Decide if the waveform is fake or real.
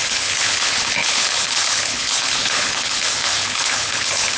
fake